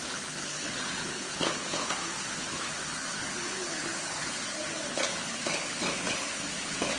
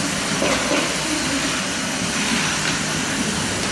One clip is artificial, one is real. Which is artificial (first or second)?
first